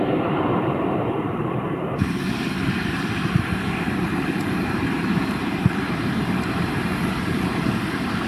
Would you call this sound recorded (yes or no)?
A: no